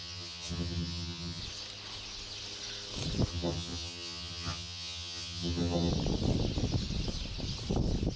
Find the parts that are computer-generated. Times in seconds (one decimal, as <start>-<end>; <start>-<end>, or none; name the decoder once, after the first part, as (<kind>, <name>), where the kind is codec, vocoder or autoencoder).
0.0-1.4 (vocoder, HiFi-GAN); 3.3-5.9